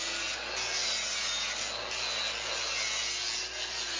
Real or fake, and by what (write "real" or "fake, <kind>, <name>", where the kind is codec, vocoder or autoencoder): real